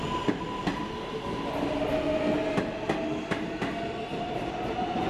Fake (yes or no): no